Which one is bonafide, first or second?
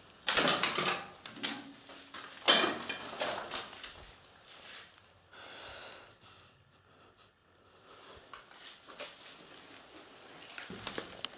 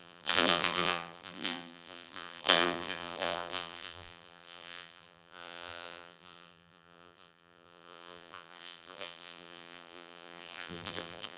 first